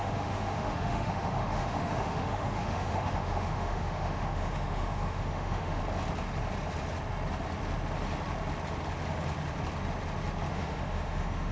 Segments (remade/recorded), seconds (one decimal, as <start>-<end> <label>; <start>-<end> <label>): 0.0-5.8 remade; 5.8-10.5 recorded; 10.5-11.5 remade